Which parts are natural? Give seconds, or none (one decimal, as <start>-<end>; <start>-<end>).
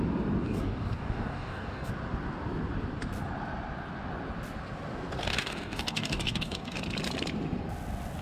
0.0-0.4; 1.9-5.3; 6.8-8.2